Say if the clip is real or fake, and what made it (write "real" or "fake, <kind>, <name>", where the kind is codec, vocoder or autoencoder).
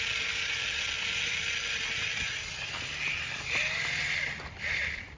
real